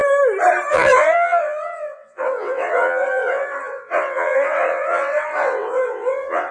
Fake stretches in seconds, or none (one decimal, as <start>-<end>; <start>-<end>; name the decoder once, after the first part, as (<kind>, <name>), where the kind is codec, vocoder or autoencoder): 0.7-6.5 (vocoder, WaveNeXt)